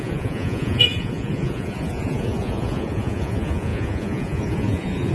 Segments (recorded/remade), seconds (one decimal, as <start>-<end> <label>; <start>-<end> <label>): 0.0-5.1 remade